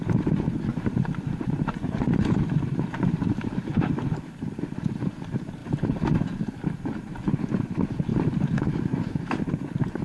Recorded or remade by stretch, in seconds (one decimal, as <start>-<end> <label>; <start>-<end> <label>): 0.0-0.7 recorded; 0.7-3.7 remade; 3.7-8.1 recorded; 8.1-9.4 remade; 9.4-10.0 recorded